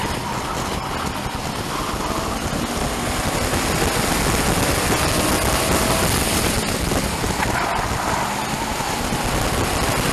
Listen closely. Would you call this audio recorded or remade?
recorded